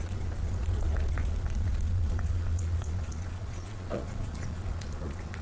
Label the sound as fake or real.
fake